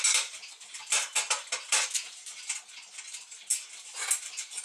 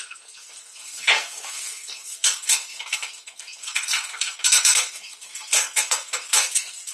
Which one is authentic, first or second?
first